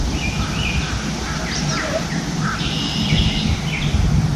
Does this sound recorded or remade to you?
recorded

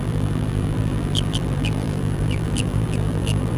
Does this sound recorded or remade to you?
remade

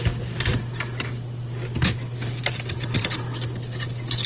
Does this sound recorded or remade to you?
recorded